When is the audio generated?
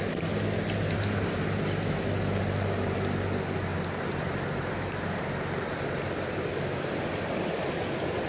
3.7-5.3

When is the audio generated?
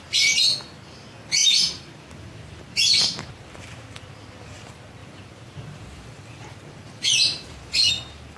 1.4-4.2; 5.0-7.9